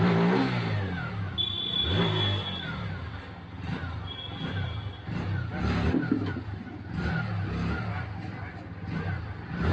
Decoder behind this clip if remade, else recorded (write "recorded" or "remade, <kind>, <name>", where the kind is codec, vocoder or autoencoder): recorded